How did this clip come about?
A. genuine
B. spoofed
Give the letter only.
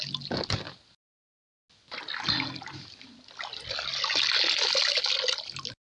A